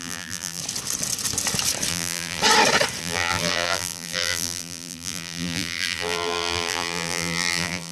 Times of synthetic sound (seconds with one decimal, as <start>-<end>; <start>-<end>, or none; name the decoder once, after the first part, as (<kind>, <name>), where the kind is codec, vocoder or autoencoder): 0.0-0.6 (vocoder, BigVGAN v2); 1.9-2.4; 3.0-7.9